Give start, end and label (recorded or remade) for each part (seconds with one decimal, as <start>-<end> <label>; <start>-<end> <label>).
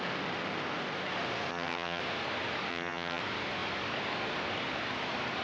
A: 0.0-1.5 recorded; 1.5-2.0 remade; 2.0-2.7 recorded; 2.7-3.2 remade; 3.2-5.4 recorded